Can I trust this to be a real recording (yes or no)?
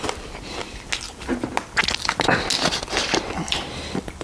yes